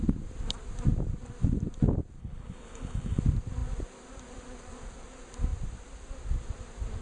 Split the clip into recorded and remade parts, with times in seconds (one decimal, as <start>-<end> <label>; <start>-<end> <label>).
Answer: 0.0-2.2 recorded; 2.2-3.2 remade; 3.2-7.0 recorded